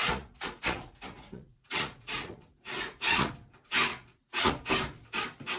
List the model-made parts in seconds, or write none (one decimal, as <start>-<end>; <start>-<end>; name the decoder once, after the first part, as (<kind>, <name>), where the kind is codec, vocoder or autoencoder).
0.0-3.3 (vocoder, Vocos); 3.9-4.5